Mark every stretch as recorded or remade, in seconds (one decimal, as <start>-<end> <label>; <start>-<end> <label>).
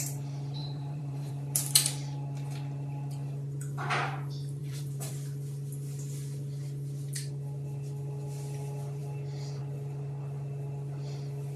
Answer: 0.0-0.6 recorded; 0.6-1.3 remade; 1.3-4.6 recorded; 4.6-5.1 remade; 5.1-11.6 recorded